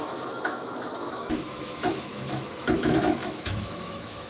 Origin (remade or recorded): remade